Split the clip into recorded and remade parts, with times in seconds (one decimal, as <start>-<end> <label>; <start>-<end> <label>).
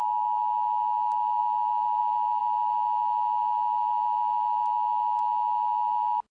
0.0-6.3 recorded